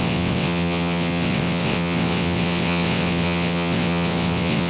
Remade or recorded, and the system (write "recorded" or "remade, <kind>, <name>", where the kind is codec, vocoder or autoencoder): remade, vocoder, WaveNeXt